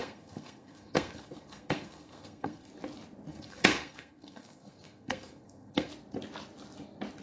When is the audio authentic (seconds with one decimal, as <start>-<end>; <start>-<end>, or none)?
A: 2.7-3.3; 5.9-7.2